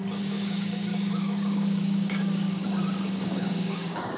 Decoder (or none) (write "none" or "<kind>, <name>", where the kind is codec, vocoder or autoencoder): codec, DAC